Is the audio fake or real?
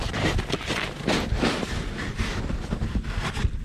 real